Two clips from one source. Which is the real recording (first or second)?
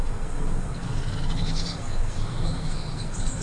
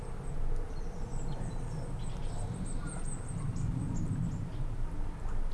second